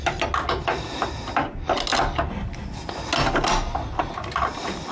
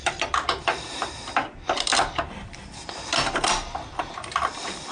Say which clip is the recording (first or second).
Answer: first